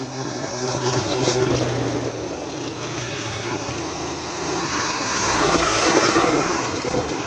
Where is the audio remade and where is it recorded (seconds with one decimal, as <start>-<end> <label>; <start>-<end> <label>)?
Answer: 0.0-1.5 remade; 1.5-3.0 recorded; 3.0-3.7 remade; 3.7-4.6 recorded; 4.6-7.3 remade